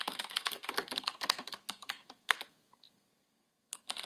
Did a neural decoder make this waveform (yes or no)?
yes